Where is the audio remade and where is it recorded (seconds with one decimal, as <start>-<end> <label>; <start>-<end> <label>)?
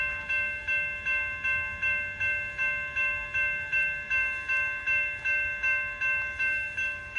0.0-7.2 recorded